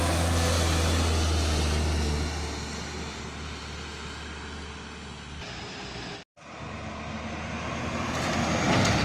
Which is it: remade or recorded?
recorded